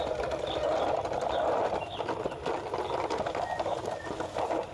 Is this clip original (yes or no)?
yes